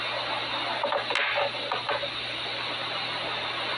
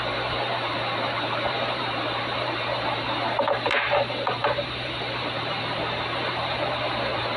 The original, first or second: first